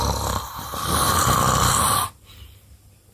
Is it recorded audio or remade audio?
remade